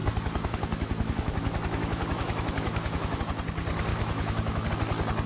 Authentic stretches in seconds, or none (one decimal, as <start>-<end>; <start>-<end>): 3.2-3.9; 4.7-5.3

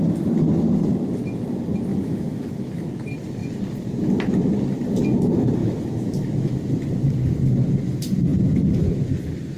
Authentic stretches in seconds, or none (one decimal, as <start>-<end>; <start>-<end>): 0.0-1.9; 2.9-5.6; 6.6-9.6

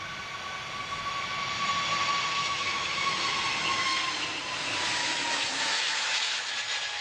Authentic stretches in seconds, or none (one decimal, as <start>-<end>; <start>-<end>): 0.0-2.4; 3.2-5.0; 6.5-7.0